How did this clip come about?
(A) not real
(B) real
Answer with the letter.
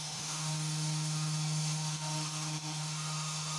A